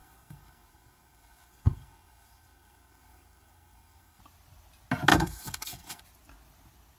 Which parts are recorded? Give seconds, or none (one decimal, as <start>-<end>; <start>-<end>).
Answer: 4.2-5.1; 6.0-7.0